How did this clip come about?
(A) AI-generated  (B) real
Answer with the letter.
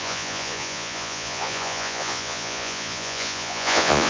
A